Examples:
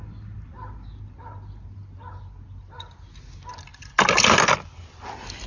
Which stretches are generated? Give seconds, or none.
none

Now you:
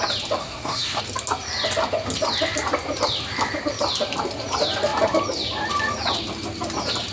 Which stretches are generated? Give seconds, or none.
0.4-1.0 (codec, SNAC)